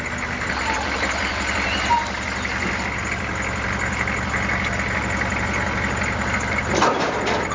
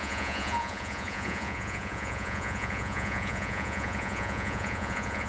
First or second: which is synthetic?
second